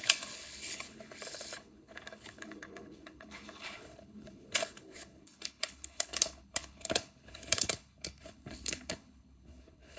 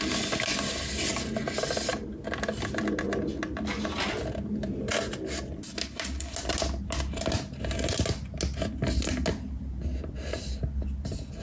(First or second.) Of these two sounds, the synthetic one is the first